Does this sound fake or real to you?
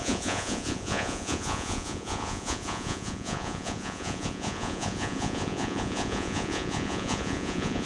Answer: fake